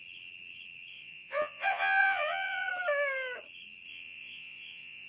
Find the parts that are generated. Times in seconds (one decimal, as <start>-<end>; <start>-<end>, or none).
0.9-2.7; 3.9-5.1